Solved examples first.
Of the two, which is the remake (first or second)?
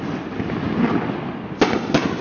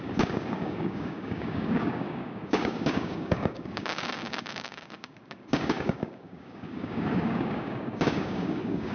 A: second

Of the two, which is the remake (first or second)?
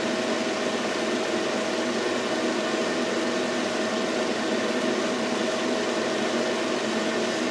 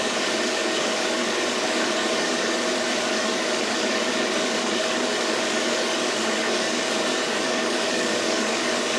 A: second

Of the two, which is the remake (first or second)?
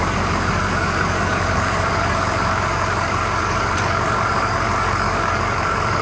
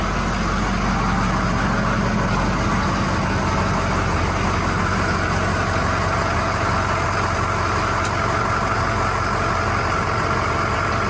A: first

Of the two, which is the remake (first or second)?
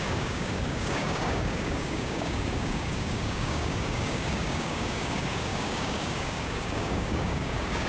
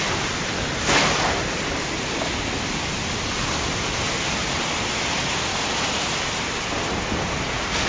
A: first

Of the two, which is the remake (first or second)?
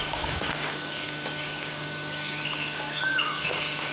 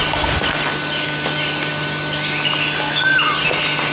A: first